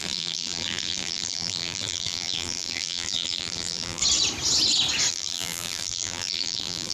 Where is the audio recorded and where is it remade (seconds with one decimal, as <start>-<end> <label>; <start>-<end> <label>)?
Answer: 0.0-4.0 remade; 4.0-5.1 recorded; 5.1-6.9 remade